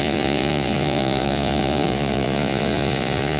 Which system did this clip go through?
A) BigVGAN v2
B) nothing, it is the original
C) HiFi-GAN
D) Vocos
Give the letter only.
D